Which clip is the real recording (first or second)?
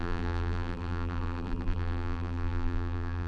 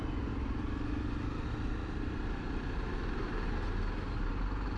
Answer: second